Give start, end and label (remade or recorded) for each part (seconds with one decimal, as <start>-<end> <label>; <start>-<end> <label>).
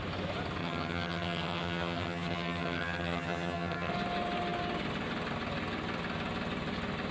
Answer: 0.0-0.6 recorded; 0.6-3.9 remade; 3.9-7.1 recorded